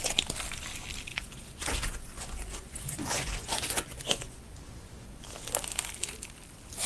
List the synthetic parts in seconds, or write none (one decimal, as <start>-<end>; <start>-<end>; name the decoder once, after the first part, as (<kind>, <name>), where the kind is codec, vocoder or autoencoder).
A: 1.1-5.2 (vocoder, Vocos)